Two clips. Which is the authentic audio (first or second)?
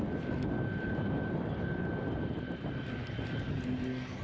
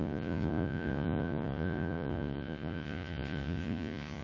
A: first